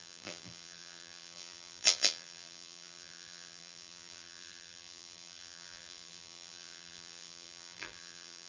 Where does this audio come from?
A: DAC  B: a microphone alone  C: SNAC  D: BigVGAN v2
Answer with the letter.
D